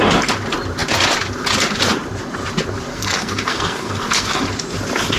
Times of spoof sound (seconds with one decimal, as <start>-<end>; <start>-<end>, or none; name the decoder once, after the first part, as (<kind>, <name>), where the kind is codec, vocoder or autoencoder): 2.9-4.4 (codec, SNAC)